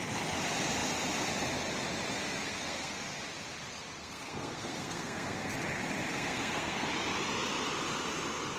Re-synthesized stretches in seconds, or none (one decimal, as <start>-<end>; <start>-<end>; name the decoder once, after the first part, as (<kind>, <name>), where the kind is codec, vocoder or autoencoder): 2.1-3.2 (codec, SNAC); 4.0-5.5; 6.1-6.9